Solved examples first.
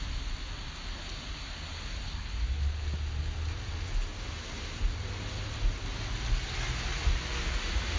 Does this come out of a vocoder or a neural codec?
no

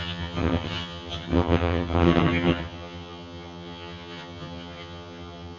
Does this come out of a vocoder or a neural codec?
yes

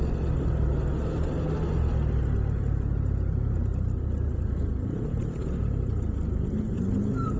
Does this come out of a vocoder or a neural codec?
no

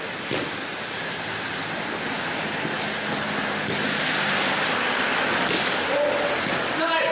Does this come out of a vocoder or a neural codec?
no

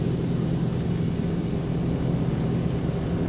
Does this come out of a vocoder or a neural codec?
no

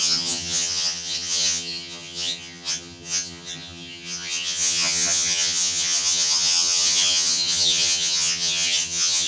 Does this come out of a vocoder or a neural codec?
yes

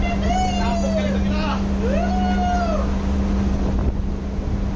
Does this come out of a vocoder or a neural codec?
no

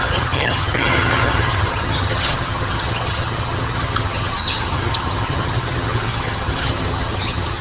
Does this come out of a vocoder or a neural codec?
yes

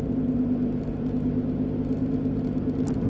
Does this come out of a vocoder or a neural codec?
no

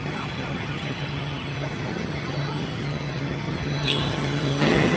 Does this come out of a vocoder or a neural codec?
yes